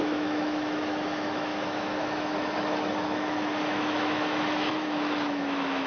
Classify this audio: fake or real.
fake